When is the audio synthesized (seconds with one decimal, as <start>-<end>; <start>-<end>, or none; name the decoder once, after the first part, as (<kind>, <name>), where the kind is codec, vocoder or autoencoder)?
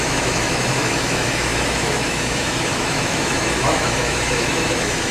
0.0-5.1 (autoencoder, DAC-VAE)